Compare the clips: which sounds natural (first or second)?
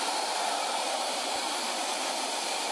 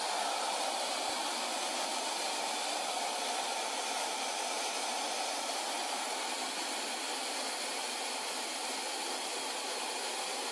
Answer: second